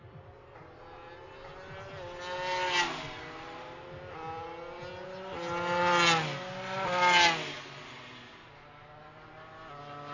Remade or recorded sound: recorded